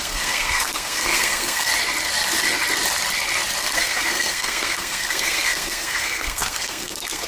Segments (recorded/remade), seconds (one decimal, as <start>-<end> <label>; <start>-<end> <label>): 0.0-1.7 remade; 1.7-3.6 recorded; 3.6-7.3 remade

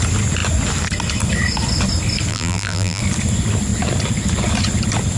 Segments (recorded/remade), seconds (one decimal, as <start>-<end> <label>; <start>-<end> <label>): 0.0-2.3 recorded; 2.3-3.0 remade; 3.0-5.2 recorded

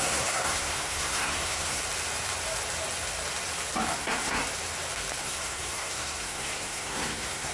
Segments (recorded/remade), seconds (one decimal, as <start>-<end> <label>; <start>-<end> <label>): 0.0-1.8 remade; 1.8-4.0 recorded; 4.0-4.4 remade; 4.4-5.2 recorded; 5.2-7.5 remade

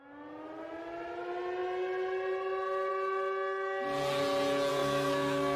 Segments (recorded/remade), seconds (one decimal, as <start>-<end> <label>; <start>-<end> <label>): 0.0-4.7 recorded; 4.7-5.6 remade

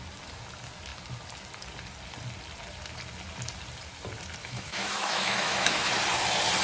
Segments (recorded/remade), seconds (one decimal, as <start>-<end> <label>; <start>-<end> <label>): 0.0-4.4 recorded; 4.4-5.9 remade; 5.9-6.6 recorded

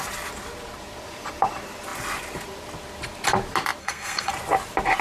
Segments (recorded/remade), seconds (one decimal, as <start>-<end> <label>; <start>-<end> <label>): 0.0-3.8 recorded; 3.8-4.3 remade; 4.3-5.0 recorded

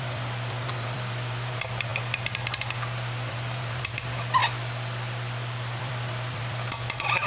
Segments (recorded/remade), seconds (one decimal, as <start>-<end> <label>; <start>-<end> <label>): 0.0-1.9 remade; 1.9-3.3 recorded; 3.3-4.4 remade; 4.4-5.8 recorded; 5.8-7.3 remade

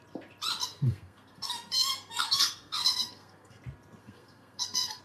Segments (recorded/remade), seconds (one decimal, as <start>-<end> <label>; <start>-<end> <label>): 0.0-0.6 recorded; 0.6-3.6 remade; 3.6-4.0 recorded; 4.0-5.0 remade